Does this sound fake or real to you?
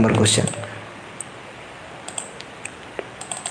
real